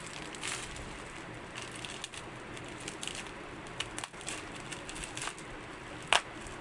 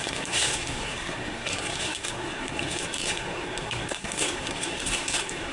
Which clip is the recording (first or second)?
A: first